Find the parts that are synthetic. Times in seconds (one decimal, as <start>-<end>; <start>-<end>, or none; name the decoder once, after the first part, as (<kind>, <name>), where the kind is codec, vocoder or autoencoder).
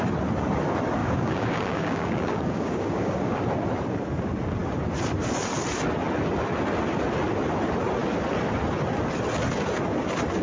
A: 1.0-3.4 (codec, DAC)